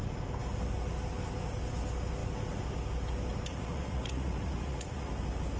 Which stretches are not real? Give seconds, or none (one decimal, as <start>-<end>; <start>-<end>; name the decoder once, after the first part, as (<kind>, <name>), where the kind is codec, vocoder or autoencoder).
3.5-5.1 (vocoder, Vocos)